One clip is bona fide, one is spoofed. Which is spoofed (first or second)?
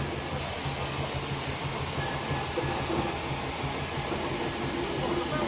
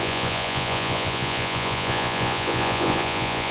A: second